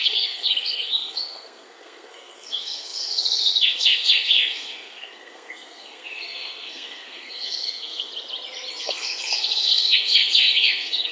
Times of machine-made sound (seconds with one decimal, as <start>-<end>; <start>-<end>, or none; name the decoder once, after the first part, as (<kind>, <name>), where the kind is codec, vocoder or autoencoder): 0.0-8.1 (codec, SNAC); 8.8-11.1